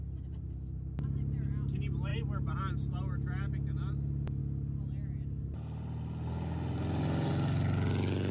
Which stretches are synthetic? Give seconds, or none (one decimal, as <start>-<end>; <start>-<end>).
none